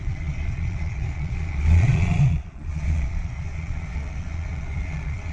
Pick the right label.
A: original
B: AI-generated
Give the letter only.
B